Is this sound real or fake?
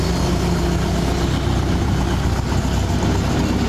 real